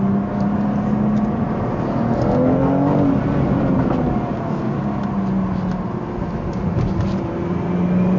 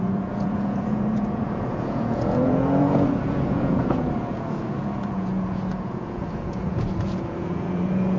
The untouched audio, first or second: first